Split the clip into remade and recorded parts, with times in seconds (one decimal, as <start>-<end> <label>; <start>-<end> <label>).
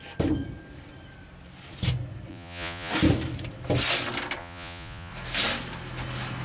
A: 0.0-2.3 recorded; 2.3-2.9 remade; 2.9-4.4 recorded; 4.4-5.1 remade; 5.1-6.4 recorded